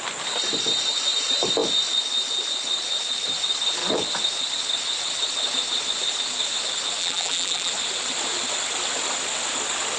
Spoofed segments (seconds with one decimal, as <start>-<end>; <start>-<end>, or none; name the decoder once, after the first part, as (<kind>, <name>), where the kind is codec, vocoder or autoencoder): 7.0-7.7 (vocoder, BigVGAN v2)